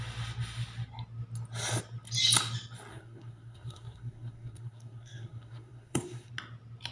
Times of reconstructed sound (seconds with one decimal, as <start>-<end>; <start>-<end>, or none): 2.9-6.3